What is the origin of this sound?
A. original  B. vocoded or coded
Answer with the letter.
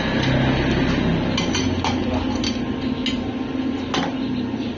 A